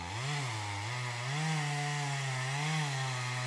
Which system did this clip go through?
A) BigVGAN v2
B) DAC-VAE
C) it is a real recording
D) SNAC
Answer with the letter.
C